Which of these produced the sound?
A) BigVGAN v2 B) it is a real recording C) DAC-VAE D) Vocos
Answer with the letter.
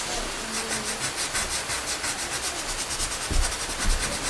B